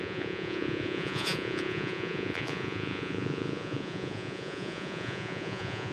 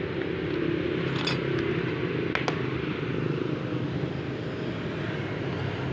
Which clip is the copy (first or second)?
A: first